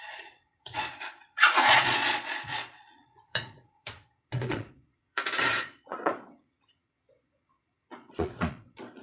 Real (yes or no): no